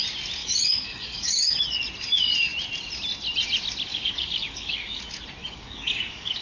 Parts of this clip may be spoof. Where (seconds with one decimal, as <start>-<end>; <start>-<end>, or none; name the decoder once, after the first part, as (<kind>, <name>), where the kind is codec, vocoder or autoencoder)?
0.4-1.6 (codec, DAC); 3.9-5.0; 5.4-6.4